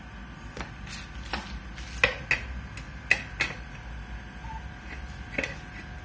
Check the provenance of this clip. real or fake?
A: real